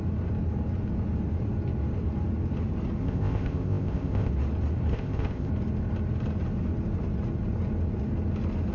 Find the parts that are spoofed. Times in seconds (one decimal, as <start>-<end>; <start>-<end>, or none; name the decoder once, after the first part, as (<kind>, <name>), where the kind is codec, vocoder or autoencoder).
3.0-4.3 (codec, ZipCodec); 4.9-5.5